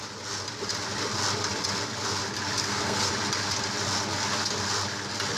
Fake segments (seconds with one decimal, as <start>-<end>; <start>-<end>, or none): 2.6-3.1